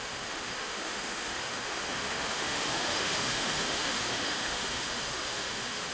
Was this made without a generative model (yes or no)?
no